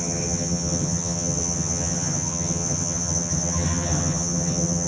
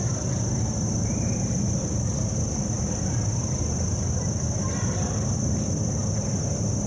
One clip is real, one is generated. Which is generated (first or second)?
first